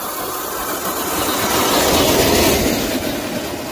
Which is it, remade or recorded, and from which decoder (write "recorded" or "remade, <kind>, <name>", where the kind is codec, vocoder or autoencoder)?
recorded